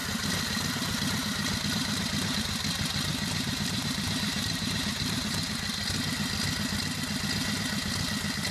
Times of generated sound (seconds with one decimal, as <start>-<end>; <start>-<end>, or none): 3.1-5.5